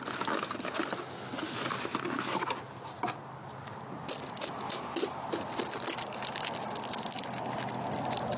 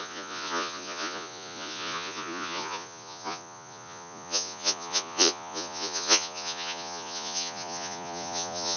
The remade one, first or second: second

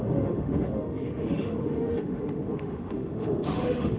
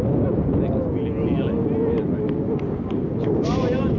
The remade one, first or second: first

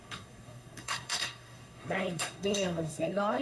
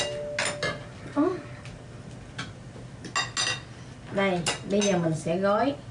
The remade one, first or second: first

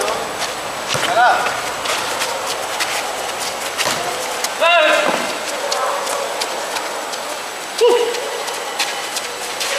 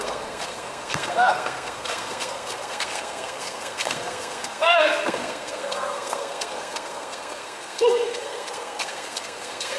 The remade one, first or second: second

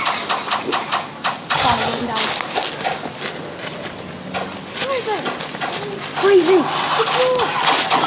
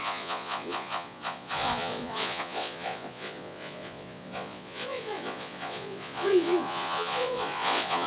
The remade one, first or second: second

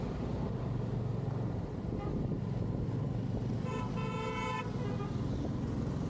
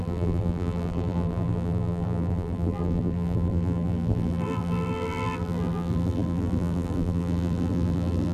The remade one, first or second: second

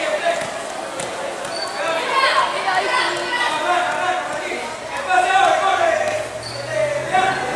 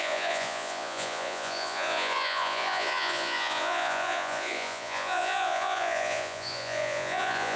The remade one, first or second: second